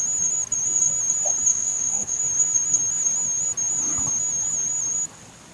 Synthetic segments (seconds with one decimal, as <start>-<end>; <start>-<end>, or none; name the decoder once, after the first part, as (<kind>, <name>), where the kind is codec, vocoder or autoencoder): 1.5-2.2 (autoencoder, DAC-VAE)